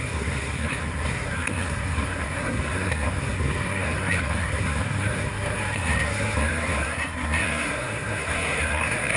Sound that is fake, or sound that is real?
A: fake